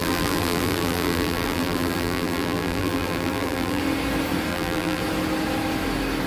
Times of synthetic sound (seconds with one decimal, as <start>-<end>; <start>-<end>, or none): 0.0-3.8; 4.5-5.0